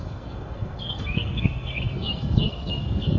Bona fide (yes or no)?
no